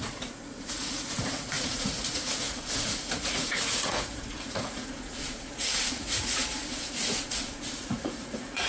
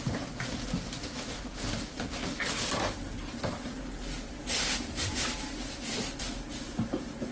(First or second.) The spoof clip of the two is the first